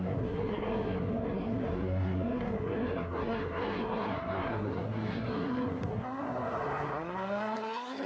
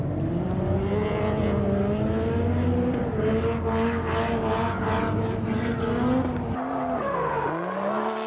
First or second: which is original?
second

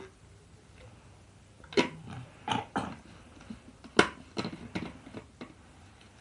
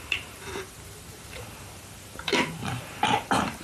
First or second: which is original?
first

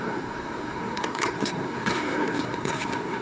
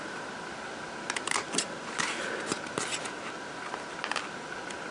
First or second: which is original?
second